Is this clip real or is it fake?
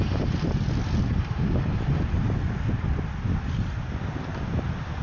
real